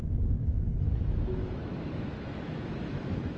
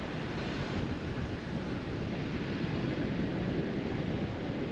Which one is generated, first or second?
first